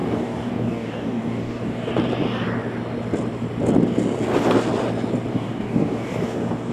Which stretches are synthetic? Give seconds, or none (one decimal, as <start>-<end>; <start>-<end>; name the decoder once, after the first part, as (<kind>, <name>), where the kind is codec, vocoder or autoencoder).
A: 0.0-1.9 (codec, DAC); 5.3-6.7